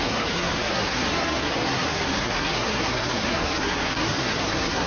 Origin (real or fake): fake